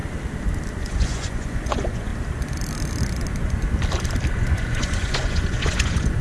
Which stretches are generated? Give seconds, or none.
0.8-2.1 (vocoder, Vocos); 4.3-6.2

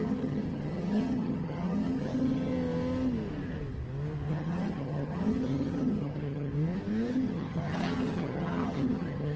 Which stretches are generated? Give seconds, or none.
0.0-2.5 (vocoder, HiFi-GAN); 4.3-6.5; 7.1-9.4

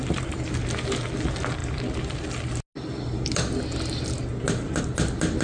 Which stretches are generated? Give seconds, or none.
none

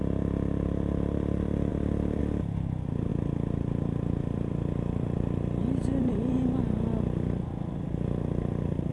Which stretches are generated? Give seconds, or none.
1.7-2.2 (vocoder, BigVGAN v2); 3.1-6.6

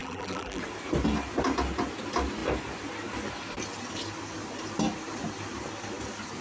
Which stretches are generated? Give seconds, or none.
0.0-0.6 (vocoder, BigVGAN v2)

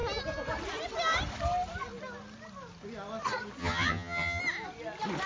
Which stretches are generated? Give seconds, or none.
3.6-4.4 (vocoder, HiFi-GAN)